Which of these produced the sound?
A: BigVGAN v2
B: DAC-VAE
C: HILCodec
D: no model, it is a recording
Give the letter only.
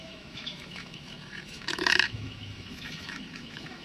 B